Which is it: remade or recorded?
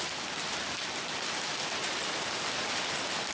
recorded